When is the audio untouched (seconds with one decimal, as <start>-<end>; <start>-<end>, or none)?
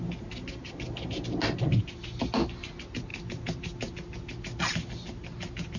0.0-5.8